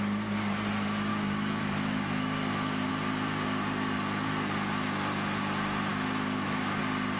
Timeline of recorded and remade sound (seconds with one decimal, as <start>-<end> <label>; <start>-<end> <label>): 0.0-1.1 recorded; 1.1-2.9 remade; 2.9-5.9 recorded; 5.9-6.8 remade; 6.8-7.2 recorded